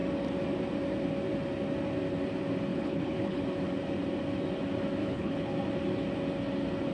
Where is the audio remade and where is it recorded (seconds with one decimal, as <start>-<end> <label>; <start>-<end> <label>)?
0.0-2.7 recorded; 2.7-3.4 remade; 3.4-5.0 recorded; 5.0-5.5 remade; 5.5-6.9 recorded